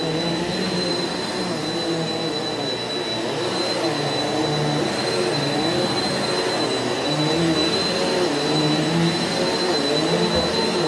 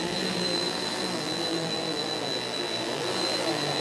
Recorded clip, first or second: first